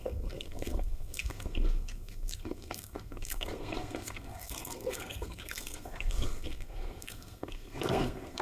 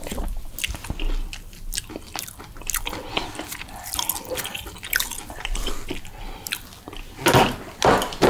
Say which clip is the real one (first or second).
second